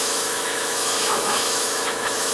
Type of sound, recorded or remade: remade